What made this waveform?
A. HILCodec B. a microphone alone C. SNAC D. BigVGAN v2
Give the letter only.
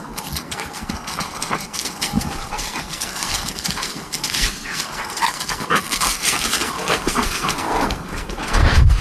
C